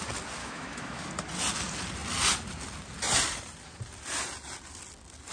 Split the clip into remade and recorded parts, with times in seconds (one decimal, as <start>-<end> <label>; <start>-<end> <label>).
0.0-0.4 recorded; 0.4-1.0 remade; 1.0-5.3 recorded

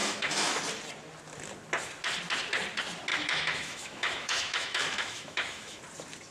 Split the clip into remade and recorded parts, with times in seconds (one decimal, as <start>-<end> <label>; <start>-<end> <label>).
0.0-0.6 remade; 0.6-3.1 recorded; 3.1-5.8 remade; 5.8-6.3 recorded